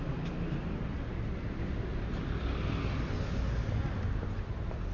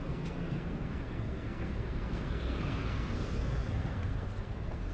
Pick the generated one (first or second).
second